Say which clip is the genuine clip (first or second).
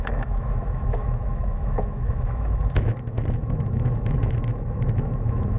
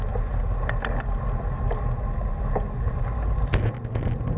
second